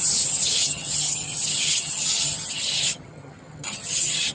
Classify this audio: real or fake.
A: fake